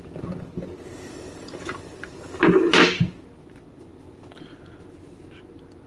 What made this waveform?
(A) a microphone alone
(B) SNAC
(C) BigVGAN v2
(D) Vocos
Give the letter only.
A